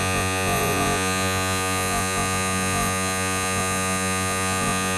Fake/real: fake